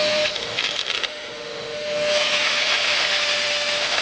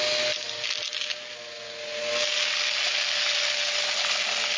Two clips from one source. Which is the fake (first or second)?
first